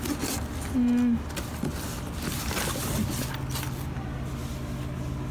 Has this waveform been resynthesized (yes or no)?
no